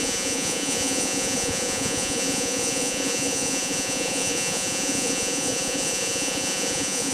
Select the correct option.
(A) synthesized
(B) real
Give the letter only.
A